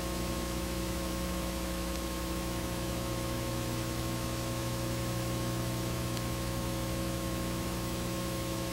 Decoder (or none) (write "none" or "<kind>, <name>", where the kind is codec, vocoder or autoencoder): autoencoder, DAC-VAE